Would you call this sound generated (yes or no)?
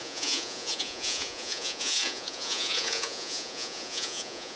yes